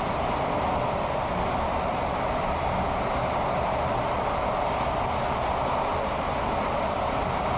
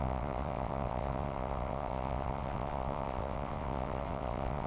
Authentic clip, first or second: first